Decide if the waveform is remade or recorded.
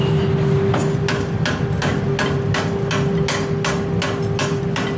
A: recorded